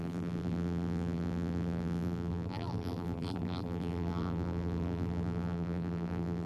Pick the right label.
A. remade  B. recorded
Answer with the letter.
A